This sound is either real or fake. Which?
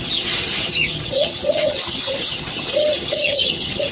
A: fake